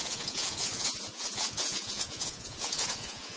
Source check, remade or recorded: remade